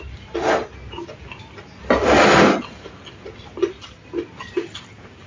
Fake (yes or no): no